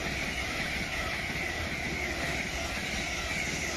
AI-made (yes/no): no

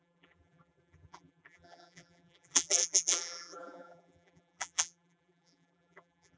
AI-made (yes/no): yes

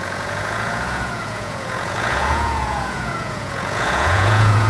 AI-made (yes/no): yes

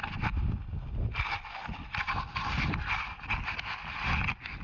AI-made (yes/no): no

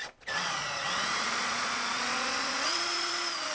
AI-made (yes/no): yes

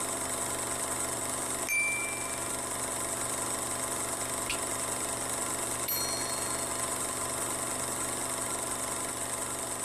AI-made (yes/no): no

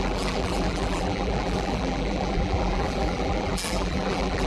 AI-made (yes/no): yes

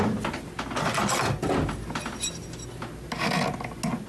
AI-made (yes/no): no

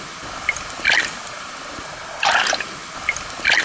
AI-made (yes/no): no